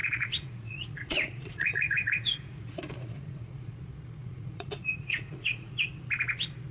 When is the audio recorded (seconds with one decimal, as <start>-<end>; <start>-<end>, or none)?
3.7-4.2; 5.7-6.7